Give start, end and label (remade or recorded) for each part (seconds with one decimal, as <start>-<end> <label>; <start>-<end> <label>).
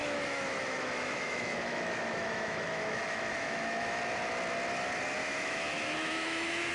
0.0-4.0 remade; 4.0-5.2 recorded; 5.2-6.7 remade